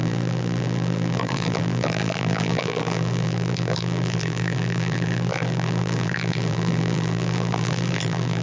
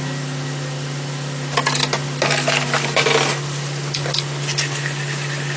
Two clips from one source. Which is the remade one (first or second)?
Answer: first